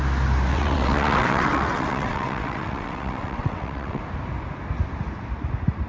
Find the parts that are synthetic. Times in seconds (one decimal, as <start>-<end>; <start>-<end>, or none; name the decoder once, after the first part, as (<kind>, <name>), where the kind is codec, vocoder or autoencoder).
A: 0.5-4.0 (vocoder, WaveNeXt)